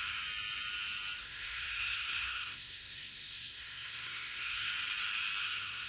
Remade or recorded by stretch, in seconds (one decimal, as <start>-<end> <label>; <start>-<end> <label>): 0.0-1.2 recorded; 1.2-4.7 remade; 4.7-5.4 recorded; 5.4-5.9 remade